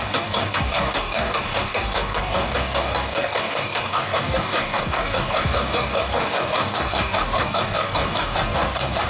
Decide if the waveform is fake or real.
fake